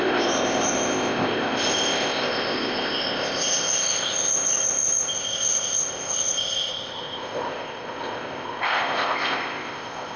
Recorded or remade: remade